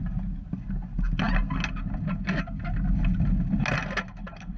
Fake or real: real